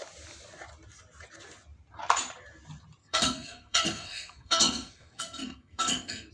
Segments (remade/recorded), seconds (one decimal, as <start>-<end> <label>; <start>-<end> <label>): 0.0-3.0 recorded; 3.0-6.3 remade